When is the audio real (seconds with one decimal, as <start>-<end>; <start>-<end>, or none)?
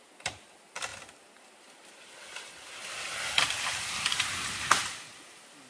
0.0-5.7